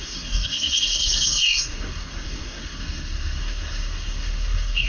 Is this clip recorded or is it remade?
remade